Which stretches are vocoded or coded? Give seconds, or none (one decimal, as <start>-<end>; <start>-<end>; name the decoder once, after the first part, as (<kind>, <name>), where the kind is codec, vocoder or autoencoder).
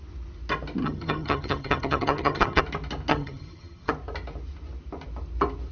0.8-2.6 (vocoder, HiFi-GAN); 3.1-3.9